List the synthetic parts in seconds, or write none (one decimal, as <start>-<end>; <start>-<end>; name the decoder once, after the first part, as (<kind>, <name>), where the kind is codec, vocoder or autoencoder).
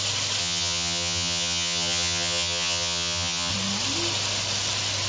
0.4-3.5 (vocoder, HiFi-GAN)